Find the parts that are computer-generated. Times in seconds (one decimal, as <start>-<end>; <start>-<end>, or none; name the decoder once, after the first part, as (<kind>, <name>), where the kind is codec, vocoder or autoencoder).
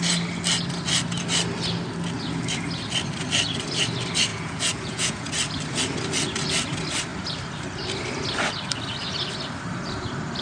4.3-5.3 (vocoder, Vocos)